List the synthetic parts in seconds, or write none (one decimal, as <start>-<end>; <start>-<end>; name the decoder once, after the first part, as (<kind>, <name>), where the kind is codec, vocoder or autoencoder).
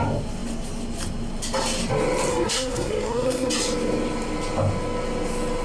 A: 2.3-3.5 (codec, SNAC)